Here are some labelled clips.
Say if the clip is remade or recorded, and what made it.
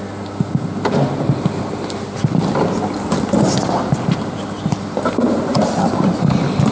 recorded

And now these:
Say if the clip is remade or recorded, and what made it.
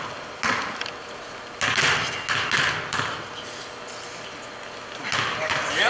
recorded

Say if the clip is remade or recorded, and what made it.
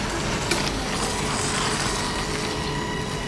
recorded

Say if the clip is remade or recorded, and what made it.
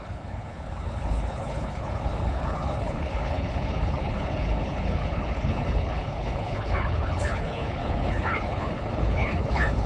remade, codec, HILCodec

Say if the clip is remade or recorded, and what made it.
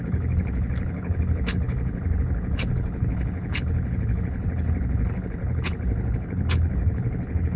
remade, codec, HILCodec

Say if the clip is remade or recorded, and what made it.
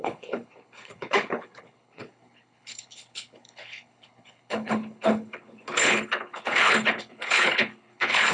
remade, codec, HILCodec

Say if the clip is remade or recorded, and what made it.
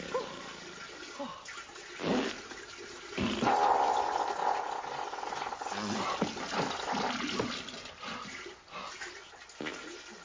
recorded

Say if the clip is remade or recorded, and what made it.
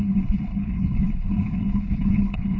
remade, codec, HILCodec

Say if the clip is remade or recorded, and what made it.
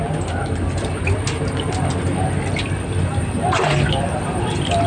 recorded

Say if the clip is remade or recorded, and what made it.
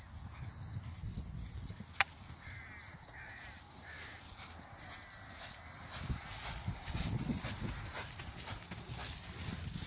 recorded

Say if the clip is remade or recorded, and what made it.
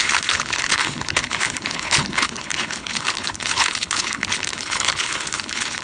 remade, codec, HILCodec